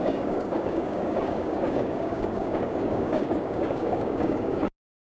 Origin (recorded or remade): remade